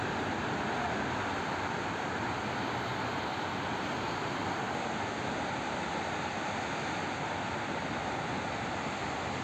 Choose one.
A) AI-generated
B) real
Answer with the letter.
B